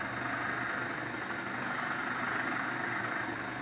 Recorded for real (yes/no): yes